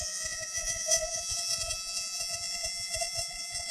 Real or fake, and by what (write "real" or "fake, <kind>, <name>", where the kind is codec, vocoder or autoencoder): fake, vocoder, Vocos